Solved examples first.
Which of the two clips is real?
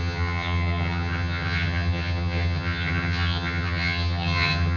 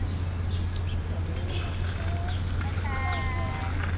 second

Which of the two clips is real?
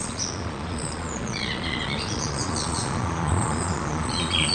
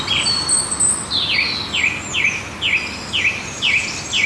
second